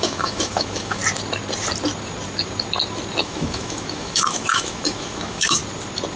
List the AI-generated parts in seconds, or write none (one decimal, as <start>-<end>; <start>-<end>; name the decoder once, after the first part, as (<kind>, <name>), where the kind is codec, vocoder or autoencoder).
0.0-1.0 (autoencoder, DAC-VAE); 3.2-5.6